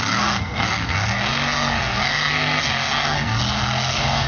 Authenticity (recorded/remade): remade